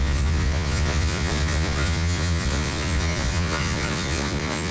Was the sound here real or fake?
fake